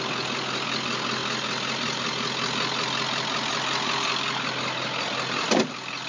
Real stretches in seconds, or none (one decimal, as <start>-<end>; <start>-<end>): 0.0-6.1